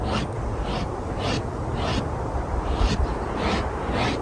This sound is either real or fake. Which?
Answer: real